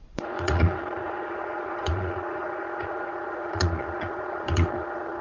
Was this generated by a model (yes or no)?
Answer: yes